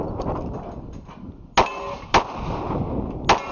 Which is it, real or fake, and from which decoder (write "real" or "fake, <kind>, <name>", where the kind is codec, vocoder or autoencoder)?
real